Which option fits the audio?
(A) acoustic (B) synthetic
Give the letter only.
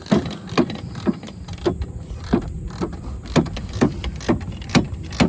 A